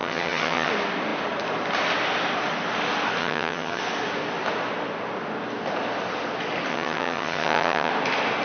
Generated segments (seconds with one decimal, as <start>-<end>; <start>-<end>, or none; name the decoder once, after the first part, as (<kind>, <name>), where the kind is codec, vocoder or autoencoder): 0.0-0.7 (vocoder, HiFi-GAN); 3.2-3.8; 6.7-7.9